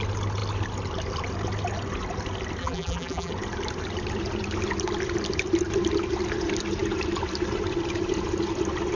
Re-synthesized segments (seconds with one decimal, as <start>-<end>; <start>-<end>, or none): 2.6-3.3